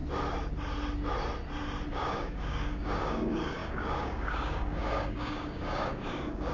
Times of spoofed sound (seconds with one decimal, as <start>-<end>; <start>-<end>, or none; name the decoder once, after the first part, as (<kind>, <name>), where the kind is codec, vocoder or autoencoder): 1.9-6.5 (codec, DAC)